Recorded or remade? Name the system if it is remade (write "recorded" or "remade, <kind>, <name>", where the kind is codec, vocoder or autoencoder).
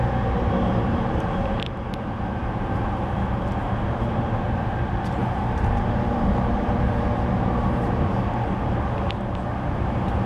remade, vocoder, BigVGAN v2